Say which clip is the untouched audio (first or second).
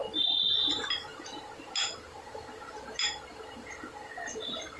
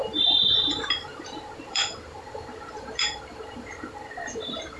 first